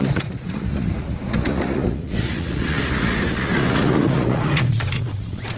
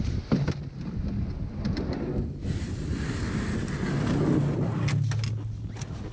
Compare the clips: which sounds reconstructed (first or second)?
first